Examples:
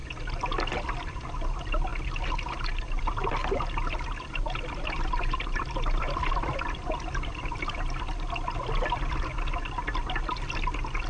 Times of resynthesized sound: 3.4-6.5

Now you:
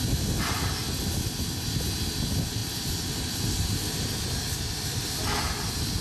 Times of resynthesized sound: none

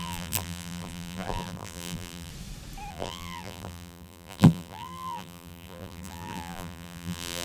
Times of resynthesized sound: 0.0-2.3; 2.9-7.4

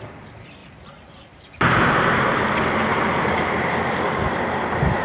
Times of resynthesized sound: 0.6-2.4

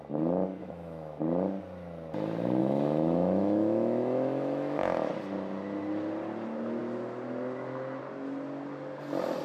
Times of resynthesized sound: 0.6-1.2; 2.6-5.1

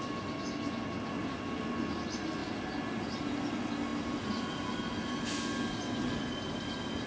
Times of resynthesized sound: none

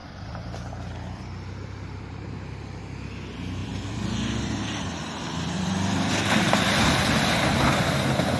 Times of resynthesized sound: 0.0-2.8; 3.6-7.0

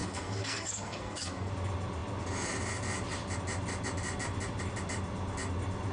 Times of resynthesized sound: 0.0-1.5